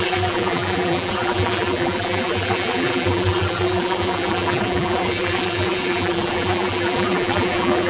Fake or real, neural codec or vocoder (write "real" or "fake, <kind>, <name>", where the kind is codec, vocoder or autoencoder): fake, vocoder, BigVGAN v2